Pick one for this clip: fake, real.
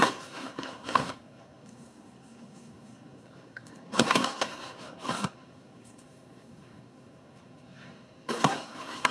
fake